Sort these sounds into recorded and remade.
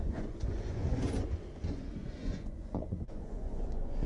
remade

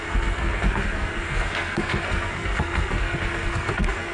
remade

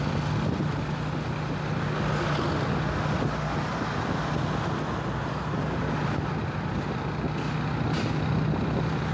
recorded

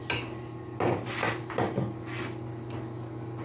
recorded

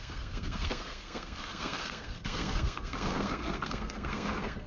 remade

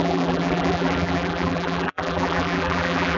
remade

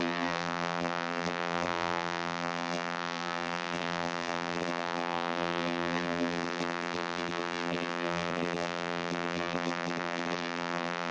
remade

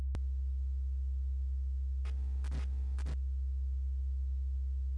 recorded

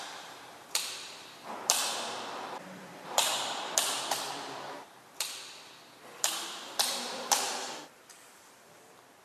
remade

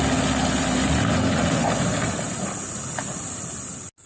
recorded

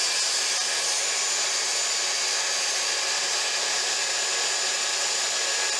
recorded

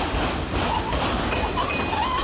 recorded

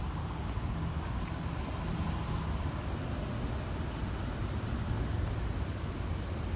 recorded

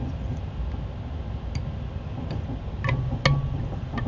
recorded